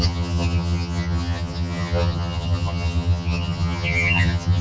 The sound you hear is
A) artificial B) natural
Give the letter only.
A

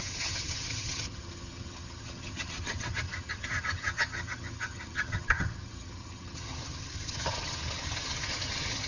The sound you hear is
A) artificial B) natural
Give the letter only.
A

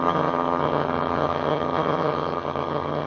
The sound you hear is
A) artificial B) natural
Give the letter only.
A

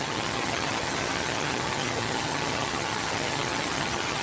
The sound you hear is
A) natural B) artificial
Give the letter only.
B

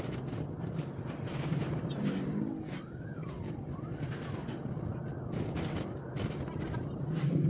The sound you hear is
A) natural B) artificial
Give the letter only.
A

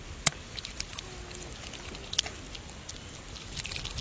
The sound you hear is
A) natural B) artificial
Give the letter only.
A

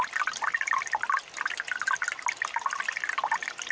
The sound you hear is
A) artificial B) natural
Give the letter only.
B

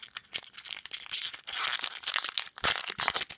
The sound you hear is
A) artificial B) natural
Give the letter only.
B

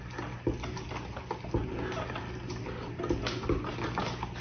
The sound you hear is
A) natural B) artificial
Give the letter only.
A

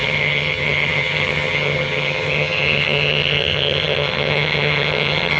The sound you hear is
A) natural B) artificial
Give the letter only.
B